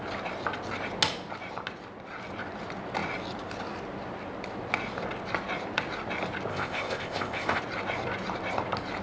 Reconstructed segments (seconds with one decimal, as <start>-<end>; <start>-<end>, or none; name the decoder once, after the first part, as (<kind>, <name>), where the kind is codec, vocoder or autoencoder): 6.5-7.6 (codec, ZipCodec)